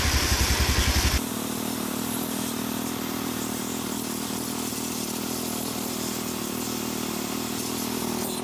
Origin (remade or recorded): recorded